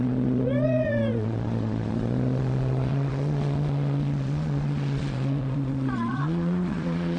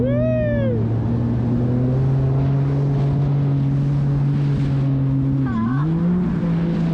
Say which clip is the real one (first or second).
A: second